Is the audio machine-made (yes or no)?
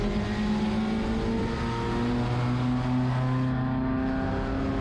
no